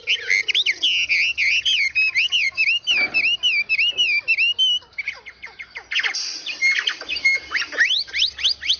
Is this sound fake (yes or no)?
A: no